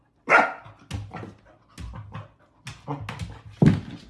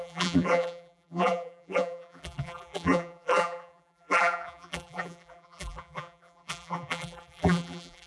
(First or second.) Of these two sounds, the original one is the first